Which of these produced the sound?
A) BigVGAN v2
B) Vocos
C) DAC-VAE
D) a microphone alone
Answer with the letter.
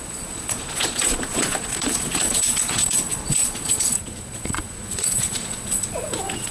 B